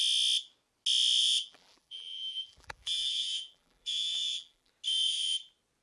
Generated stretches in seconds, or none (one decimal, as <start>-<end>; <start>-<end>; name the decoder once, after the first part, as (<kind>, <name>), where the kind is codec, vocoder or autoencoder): 1.2-4.7 (vocoder, BigVGAN v2)